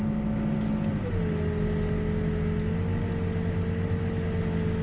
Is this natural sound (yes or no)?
yes